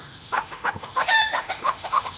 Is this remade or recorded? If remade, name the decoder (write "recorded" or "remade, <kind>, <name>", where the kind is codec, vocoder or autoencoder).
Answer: remade, autoencoder, DAC-VAE